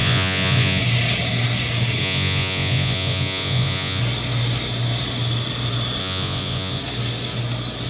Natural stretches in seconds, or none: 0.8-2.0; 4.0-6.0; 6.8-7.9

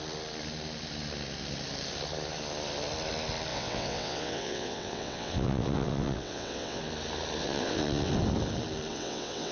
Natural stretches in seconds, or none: 0.0-3.5; 6.8-7.4; 8.1-8.9

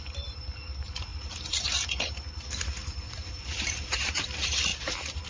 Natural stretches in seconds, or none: none